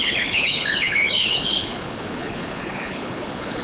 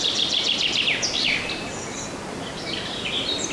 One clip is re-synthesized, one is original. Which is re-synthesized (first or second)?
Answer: first